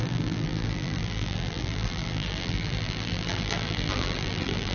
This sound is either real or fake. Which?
fake